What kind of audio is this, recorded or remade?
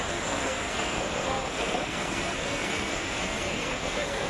remade